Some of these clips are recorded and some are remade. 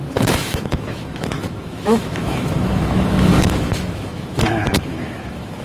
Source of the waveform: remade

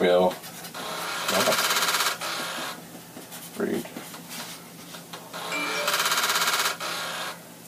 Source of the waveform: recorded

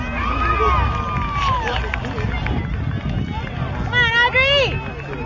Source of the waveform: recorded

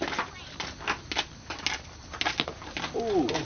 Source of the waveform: recorded